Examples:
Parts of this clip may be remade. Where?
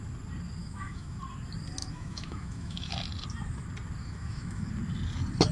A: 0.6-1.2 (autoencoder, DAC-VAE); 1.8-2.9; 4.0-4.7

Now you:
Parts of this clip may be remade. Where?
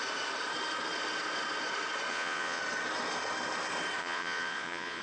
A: 2.1-2.6 (vocoder, Vocos); 4.0-5.0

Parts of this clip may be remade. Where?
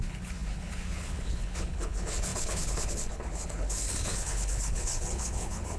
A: 0.0-5.8 (codec, HILCodec)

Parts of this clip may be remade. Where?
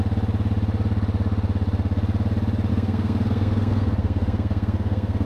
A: 2.7-5.3 (codec, SNAC)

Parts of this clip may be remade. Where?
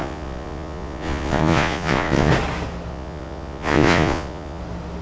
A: 0.0-2.3 (vocoder, Vocos); 2.9-4.6